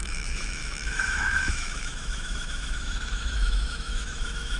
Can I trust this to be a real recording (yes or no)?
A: no